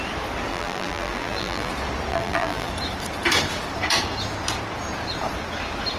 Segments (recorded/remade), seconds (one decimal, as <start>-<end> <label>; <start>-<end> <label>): 0.0-0.5 recorded; 0.5-1.7 remade; 1.7-2.1 recorded; 2.1-2.7 remade; 2.7-6.0 recorded